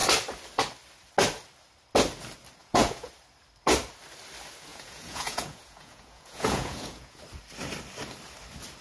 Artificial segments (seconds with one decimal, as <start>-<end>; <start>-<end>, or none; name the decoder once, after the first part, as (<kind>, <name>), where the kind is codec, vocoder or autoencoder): 2.6-3.1 (vocoder, Vocos); 4.7-7.2